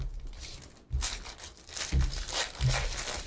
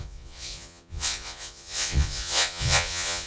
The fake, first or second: second